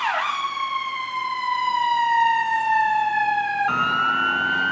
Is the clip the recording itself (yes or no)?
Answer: yes